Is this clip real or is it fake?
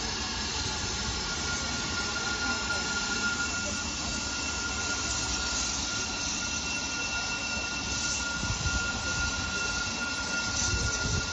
real